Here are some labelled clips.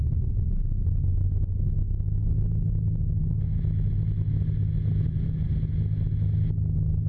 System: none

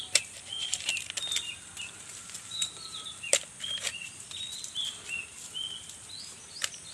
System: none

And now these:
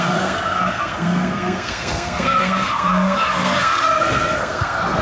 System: codec, SNAC